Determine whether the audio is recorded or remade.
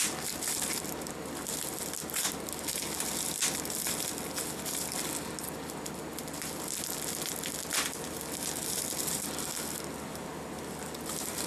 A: recorded